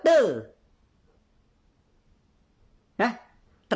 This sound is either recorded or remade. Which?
recorded